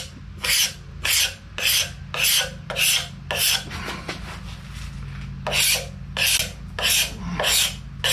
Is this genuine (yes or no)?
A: yes